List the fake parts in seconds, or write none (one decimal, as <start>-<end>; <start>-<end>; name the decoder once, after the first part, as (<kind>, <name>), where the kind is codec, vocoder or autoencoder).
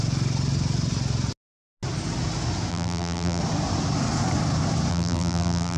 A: 2.7-3.4 (vocoder, BigVGAN v2); 4.9-5.8